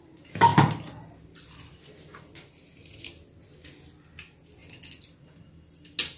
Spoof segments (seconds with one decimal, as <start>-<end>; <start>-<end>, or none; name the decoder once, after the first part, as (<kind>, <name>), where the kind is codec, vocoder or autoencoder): 0.5-3.4 (vocoder, BigVGAN v2)